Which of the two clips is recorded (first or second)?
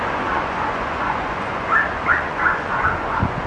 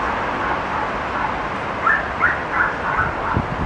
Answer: second